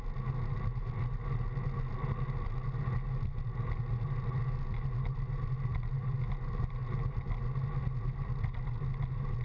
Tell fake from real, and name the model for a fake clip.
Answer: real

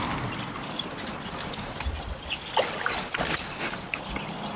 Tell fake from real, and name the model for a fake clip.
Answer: real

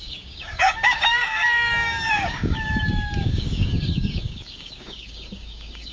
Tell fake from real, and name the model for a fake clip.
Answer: fake, codec, DAC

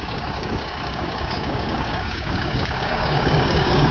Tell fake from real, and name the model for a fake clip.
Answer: fake, codec, DAC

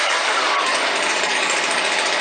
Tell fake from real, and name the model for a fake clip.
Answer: fake, codec, DAC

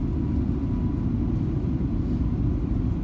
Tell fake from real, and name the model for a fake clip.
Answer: real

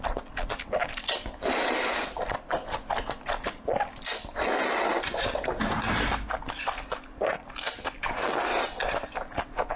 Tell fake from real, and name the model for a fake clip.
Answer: real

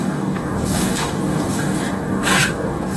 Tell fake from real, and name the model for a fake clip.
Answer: fake, codec, DAC